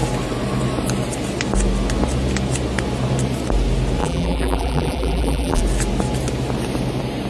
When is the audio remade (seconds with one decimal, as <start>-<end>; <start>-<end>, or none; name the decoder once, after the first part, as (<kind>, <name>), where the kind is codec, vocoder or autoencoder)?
4.0-5.6 (vocoder, BigVGAN v2)